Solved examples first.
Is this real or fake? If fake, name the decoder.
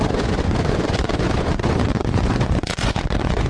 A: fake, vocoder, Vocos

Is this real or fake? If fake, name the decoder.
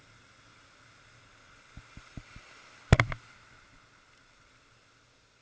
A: real